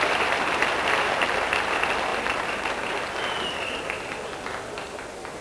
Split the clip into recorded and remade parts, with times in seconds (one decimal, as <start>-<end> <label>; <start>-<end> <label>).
0.0-5.4 recorded